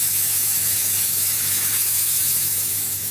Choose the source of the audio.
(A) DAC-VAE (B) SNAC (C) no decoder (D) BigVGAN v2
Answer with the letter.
A